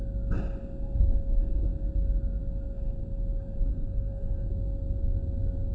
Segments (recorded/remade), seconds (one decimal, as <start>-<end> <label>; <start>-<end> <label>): 0.0-3.7 recorded; 3.7-4.5 remade; 4.5-5.7 recorded